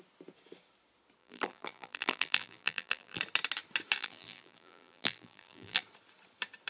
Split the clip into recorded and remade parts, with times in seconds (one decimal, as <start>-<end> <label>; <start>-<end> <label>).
0.0-1.2 recorded; 1.2-3.2 remade; 3.2-4.0 recorded; 4.0-5.8 remade; 5.8-6.7 recorded